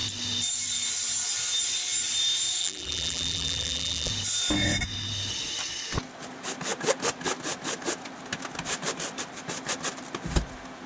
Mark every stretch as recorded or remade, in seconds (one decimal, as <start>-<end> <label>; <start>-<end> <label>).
0.0-2.6 recorded; 2.6-4.1 remade; 4.1-10.9 recorded